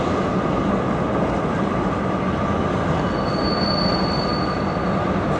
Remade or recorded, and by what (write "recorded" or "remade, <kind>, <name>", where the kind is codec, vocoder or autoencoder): recorded